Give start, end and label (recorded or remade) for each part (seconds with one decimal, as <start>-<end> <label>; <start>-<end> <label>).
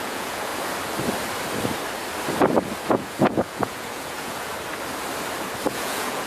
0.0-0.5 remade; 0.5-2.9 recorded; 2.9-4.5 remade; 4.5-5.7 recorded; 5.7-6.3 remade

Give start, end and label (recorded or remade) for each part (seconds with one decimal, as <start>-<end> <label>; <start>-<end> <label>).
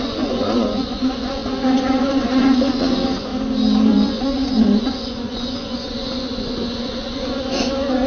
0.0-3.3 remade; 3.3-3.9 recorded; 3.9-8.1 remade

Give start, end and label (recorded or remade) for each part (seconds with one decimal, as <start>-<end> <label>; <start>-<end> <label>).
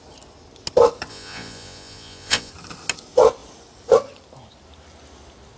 0.0-1.1 recorded; 1.1-2.5 remade; 2.5-5.6 recorded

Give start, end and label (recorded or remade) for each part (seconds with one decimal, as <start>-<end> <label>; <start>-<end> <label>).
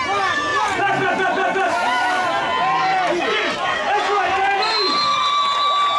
0.0-6.0 recorded